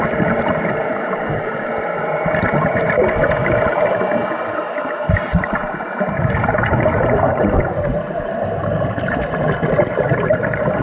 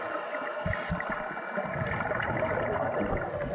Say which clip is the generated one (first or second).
first